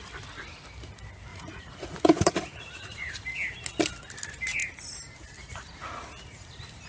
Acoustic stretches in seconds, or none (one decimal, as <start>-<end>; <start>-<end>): 0.0-1.3; 3.1-6.9